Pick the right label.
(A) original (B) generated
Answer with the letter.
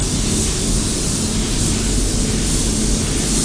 A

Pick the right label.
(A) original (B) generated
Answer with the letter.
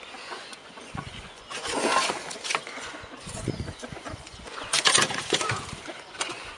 B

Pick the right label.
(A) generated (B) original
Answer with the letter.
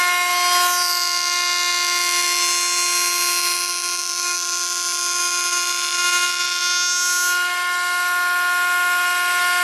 B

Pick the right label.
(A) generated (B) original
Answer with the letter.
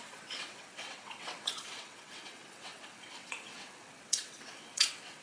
A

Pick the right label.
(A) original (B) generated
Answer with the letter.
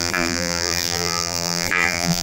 B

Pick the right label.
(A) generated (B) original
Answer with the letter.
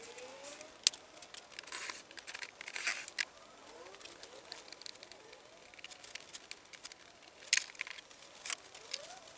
B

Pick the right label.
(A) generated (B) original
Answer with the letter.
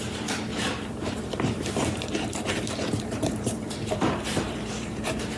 A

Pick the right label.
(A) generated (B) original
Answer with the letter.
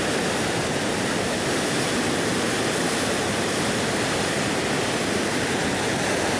B